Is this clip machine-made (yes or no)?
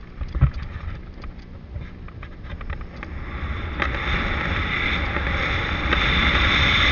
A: yes